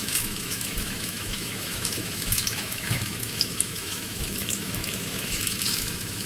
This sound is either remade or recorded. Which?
remade